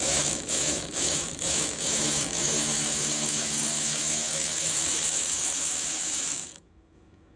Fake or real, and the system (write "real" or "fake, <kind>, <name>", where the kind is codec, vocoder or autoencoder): fake, autoencoder, DAC-VAE